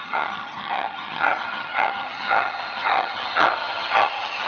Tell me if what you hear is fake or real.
fake